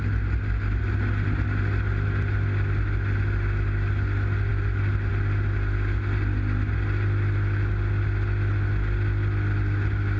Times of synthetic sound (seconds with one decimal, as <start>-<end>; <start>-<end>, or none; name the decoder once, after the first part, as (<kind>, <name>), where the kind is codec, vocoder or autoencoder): none